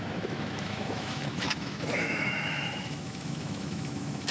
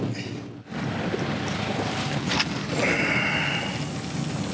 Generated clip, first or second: first